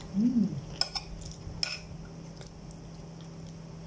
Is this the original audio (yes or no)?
yes